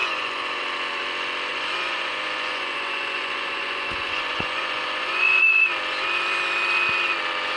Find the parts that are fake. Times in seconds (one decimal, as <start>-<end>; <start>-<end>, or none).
0.0-0.6; 1.5-5.4